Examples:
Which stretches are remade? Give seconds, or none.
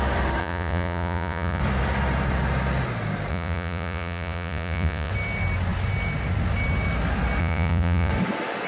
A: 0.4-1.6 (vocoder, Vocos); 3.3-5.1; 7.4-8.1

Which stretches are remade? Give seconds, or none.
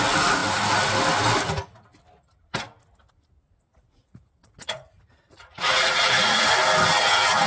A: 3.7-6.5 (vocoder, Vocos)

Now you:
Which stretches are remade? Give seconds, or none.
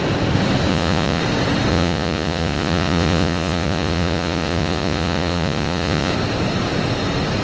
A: 0.7-1.2 (vocoder, Vocos); 1.7-6.1